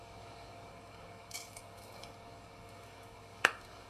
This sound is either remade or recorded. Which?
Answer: remade